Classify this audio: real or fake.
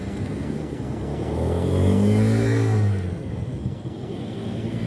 fake